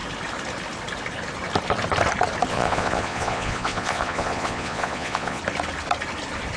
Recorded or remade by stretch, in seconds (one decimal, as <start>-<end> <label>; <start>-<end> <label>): 0.0-2.5 recorded; 2.5-5.4 remade; 5.4-6.6 recorded